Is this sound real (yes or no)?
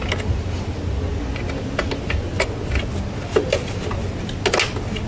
yes